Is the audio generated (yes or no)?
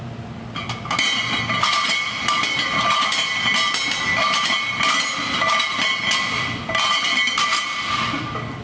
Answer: no